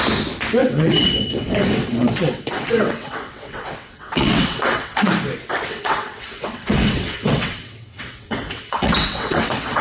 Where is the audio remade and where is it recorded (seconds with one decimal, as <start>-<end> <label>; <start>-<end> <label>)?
0.0-0.6 recorded; 0.6-5.1 remade; 5.1-5.7 recorded; 5.7-9.8 remade